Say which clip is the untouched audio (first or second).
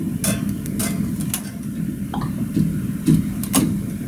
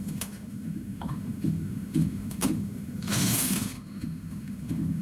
first